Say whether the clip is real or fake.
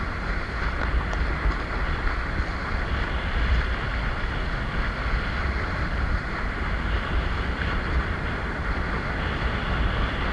real